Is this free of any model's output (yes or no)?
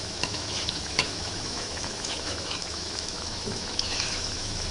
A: no